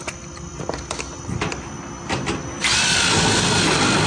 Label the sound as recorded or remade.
recorded